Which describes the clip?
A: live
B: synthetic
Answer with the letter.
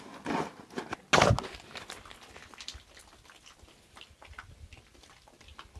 A